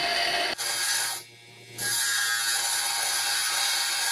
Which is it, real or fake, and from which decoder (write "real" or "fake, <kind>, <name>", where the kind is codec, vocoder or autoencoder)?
real